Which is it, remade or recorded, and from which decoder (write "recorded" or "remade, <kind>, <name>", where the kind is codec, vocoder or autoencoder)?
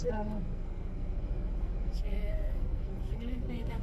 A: remade, codec, SNAC